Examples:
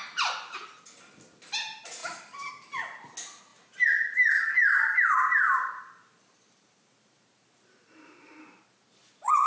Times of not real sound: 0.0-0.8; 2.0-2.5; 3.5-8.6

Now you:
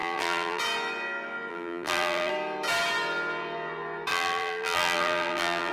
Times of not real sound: 0.0-0.6; 1.5-2.3; 4.1-5.7

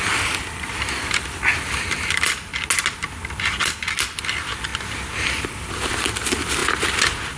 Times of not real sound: 0.0-2.5; 4.1-4.7; 5.3-6.6